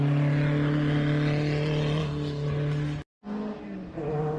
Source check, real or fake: real